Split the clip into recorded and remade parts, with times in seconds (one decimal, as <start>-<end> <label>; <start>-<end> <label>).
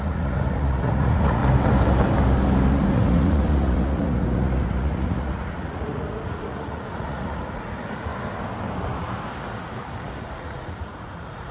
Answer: 0.0-1.4 remade; 1.4-2.7 recorded; 2.7-8.1 remade; 8.1-10.2 recorded; 10.2-11.5 remade